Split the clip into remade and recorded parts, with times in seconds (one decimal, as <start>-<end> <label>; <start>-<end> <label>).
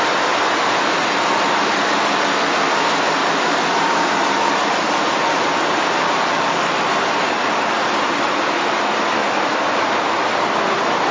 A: 0.0-3.2 recorded; 3.2-6.9 remade; 6.9-9.2 recorded; 9.2-10.2 remade; 10.2-11.1 recorded